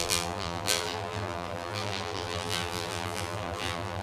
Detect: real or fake fake